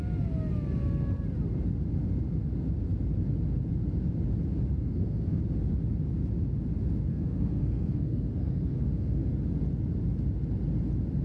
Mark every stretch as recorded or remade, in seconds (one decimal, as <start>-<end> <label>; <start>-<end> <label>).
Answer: 0.0-4.8 recorded; 4.8-5.4 remade; 5.4-7.1 recorded; 7.1-9.3 remade; 9.3-11.2 recorded